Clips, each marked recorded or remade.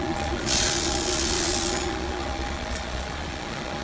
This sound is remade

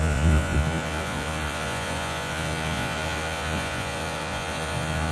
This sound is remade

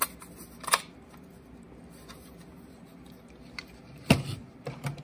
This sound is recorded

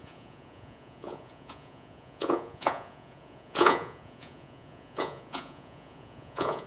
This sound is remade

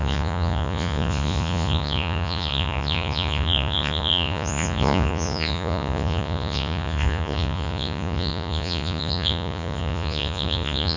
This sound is remade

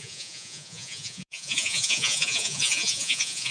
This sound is remade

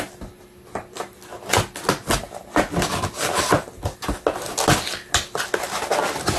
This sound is recorded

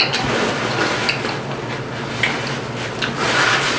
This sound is recorded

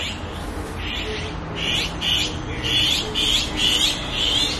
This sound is recorded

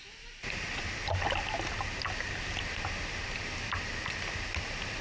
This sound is recorded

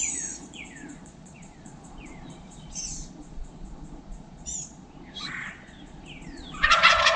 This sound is remade